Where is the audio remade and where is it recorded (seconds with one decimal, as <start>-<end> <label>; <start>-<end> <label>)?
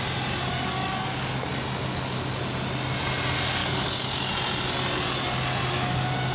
0.0-0.5 recorded; 0.5-1.5 remade; 1.5-3.6 recorded; 3.6-4.3 remade; 4.3-6.3 recorded